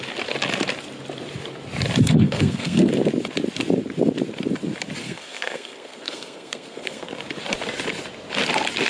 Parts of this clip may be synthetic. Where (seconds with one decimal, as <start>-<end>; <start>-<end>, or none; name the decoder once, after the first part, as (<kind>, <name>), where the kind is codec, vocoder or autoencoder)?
2.0-2.9 (codec, SNAC); 5.0-7.1